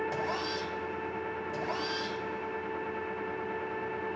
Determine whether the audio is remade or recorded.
recorded